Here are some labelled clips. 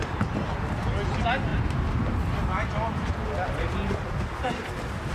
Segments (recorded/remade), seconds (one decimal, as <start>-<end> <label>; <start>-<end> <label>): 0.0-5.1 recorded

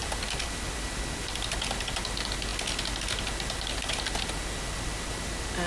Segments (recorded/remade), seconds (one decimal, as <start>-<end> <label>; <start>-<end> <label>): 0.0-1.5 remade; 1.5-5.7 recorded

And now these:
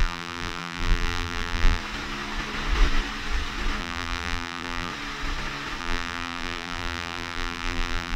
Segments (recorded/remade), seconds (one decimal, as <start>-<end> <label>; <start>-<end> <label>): 0.0-1.8 remade; 1.8-3.8 recorded; 3.8-4.9 remade; 4.9-5.8 recorded; 5.8-8.2 remade

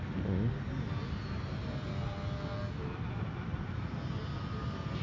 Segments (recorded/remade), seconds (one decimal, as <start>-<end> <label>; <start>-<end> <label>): 0.0-5.0 recorded

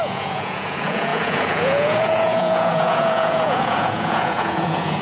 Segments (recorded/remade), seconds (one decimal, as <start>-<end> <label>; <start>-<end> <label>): 0.0-5.0 remade

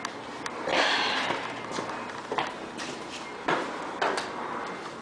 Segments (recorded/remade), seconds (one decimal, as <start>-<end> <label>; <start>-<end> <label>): 0.0-0.7 recorded; 0.7-3.7 remade; 3.7-5.0 recorded

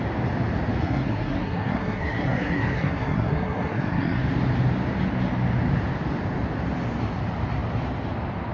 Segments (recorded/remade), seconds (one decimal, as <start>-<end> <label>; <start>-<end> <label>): 0.0-0.8 recorded; 0.8-4.2 remade; 4.2-8.5 recorded

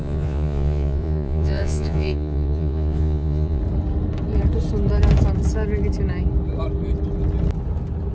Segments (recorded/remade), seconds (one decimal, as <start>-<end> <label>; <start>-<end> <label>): 0.0-3.6 remade; 3.6-8.1 recorded